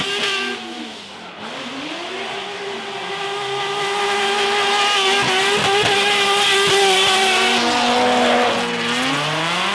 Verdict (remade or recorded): recorded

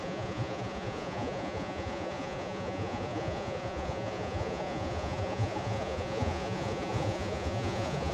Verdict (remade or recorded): remade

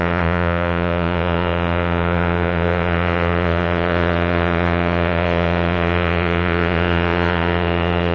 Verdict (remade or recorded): remade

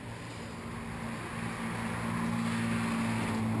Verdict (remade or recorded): recorded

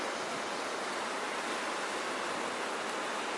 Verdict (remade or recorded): recorded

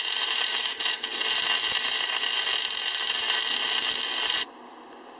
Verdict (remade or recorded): recorded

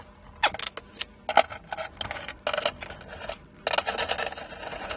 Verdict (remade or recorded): recorded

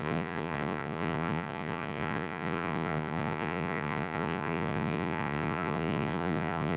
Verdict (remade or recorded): remade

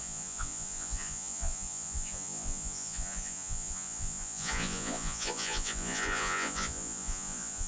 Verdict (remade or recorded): remade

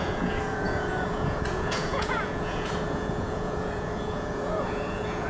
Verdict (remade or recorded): remade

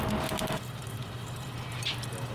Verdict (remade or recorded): recorded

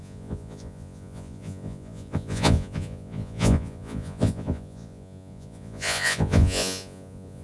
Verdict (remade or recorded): remade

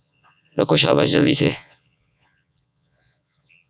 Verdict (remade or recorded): remade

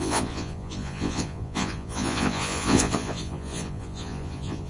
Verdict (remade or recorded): remade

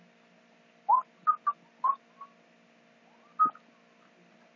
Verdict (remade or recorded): recorded